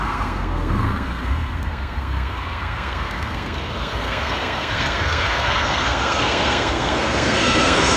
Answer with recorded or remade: remade